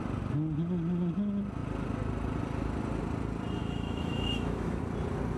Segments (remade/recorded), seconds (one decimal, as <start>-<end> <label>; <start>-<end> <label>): 0.0-3.6 recorded; 3.6-4.8 remade; 4.8-5.4 recorded